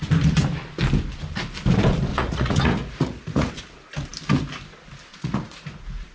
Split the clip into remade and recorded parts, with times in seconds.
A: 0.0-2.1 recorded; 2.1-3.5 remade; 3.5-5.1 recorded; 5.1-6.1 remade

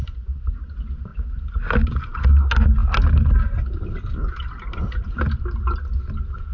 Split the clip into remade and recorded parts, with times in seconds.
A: 0.0-6.5 recorded

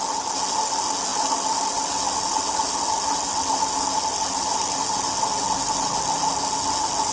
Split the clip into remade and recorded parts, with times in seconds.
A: 0.0-7.1 recorded

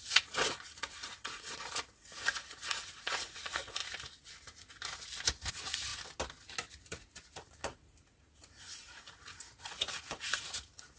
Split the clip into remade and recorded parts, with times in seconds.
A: 0.0-3.8 remade; 3.8-5.5 recorded; 5.5-5.9 remade; 5.9-6.7 recorded; 6.7-11.0 remade

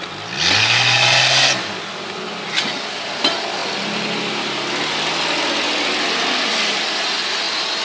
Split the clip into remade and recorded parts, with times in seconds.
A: 0.0-7.8 recorded

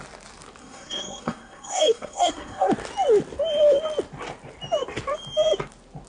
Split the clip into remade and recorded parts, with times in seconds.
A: 0.0-0.6 recorded; 0.6-2.7 remade; 2.7-6.1 recorded

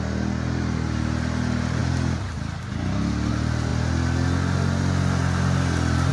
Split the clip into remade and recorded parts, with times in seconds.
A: 0.0-6.1 recorded

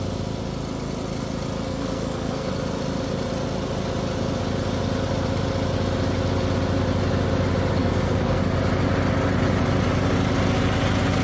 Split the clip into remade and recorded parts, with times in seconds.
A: 0.0-1.7 recorded; 1.7-2.5 remade; 2.5-7.8 recorded; 7.8-8.4 remade; 8.4-11.2 recorded